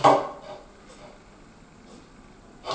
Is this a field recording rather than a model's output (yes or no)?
yes